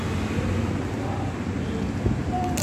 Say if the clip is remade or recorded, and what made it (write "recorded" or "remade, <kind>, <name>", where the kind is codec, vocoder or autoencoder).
recorded